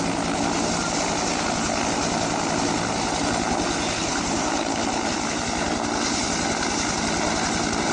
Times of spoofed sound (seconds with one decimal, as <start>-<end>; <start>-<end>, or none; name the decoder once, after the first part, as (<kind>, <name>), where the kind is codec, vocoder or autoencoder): none